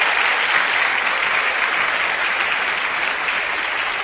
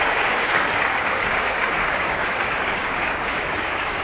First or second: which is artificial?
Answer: second